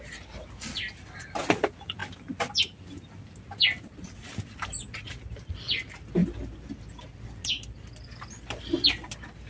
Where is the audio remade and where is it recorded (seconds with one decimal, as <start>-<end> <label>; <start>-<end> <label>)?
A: 0.0-9.5 recorded